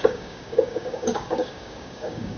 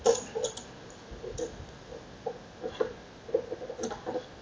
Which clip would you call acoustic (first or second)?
second